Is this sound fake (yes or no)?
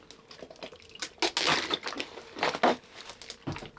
no